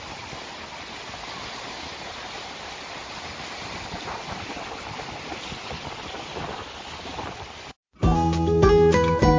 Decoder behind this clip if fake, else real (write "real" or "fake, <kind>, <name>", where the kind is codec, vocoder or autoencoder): real